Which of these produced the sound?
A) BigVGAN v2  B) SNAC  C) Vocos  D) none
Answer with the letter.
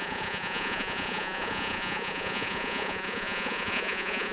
C